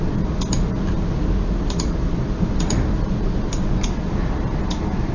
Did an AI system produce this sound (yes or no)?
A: no